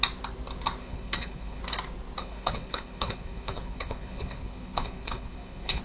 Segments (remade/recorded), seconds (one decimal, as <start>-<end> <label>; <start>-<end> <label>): 0.0-0.8 recorded; 0.8-1.6 remade; 1.6-2.2 recorded; 2.2-5.8 remade